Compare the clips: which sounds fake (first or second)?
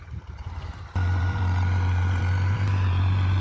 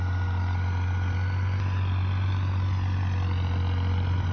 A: first